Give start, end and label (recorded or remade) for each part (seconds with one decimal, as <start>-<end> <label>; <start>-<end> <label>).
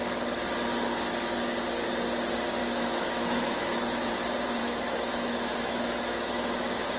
0.0-2.6 recorded; 2.6-4.1 remade; 4.1-4.6 recorded; 4.6-7.0 remade